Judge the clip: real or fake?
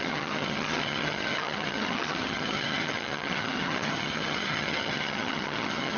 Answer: fake